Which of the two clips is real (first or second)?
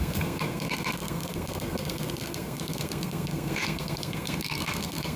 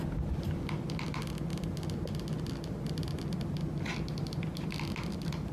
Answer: second